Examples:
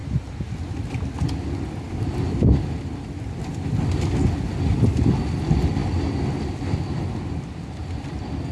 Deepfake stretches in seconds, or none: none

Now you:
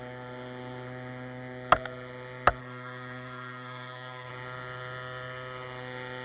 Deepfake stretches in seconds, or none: 2.6-4.3 (codec, SNAC)